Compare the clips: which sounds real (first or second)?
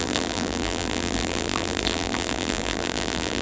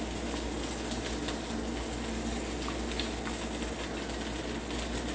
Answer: second